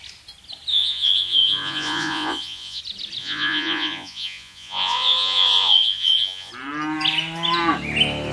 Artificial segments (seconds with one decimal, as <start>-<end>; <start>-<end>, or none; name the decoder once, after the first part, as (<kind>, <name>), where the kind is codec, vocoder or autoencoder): 0.7-2.8 (vocoder, Vocos); 3.2-6.5